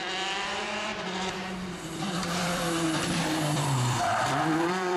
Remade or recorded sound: remade